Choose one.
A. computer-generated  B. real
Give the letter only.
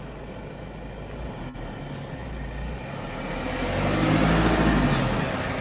B